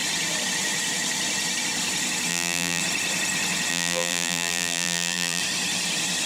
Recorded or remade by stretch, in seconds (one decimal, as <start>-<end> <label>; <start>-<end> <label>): 0.0-2.3 recorded; 2.3-2.8 remade; 2.8-3.7 recorded; 3.7-5.4 remade; 5.4-6.3 recorded